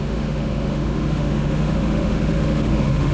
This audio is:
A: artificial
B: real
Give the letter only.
A